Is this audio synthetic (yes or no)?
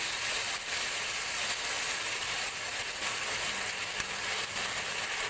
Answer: no